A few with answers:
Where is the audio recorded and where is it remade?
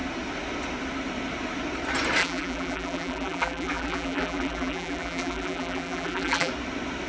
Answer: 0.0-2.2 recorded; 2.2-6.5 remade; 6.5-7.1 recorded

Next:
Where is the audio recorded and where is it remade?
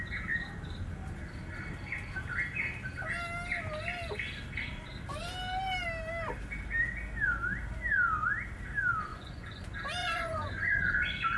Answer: 0.0-9.1 recorded; 9.1-9.6 remade; 9.6-10.0 recorded; 10.0-10.9 remade; 10.9-11.4 recorded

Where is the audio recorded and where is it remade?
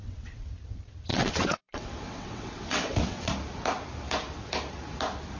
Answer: 0.0-0.5 remade; 0.5-1.1 recorded; 1.1-3.3 remade; 3.3-5.4 recorded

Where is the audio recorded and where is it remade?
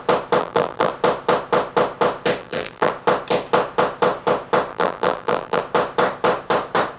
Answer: 0.0-0.4 recorded; 0.4-0.9 remade; 0.9-2.4 recorded; 2.4-2.9 remade; 2.9-4.7 recorded; 4.7-5.6 remade; 5.6-7.0 recorded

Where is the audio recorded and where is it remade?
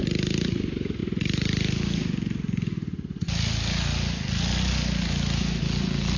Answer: 0.0-6.2 recorded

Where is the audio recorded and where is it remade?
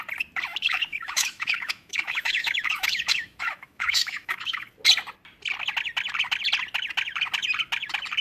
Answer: 0.0-0.5 recorded; 0.5-4.7 remade; 4.7-8.2 recorded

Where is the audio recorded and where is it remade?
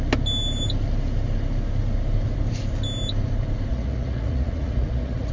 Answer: 0.0-3.7 recorded; 3.7-5.3 remade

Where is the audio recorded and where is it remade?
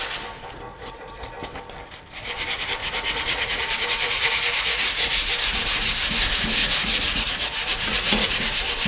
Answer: 0.0-0.7 recorded; 0.7-1.3 remade; 1.3-2.8 recorded; 2.8-5.3 remade; 5.3-6.6 recorded; 6.6-8.3 remade; 8.3-8.9 recorded